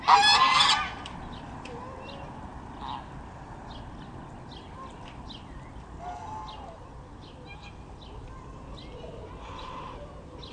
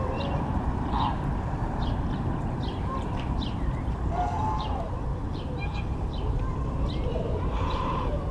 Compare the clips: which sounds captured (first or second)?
first